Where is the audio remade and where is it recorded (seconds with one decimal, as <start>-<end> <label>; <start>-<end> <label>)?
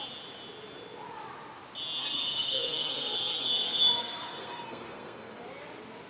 0.0-2.0 recorded; 2.0-5.4 remade; 5.4-6.1 recorded